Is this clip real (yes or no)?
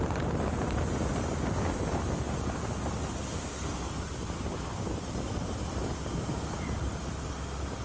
yes